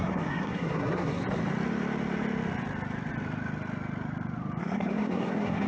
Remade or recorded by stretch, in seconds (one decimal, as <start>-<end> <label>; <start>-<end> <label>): 0.0-1.2 remade; 1.2-4.6 recorded; 4.6-5.7 remade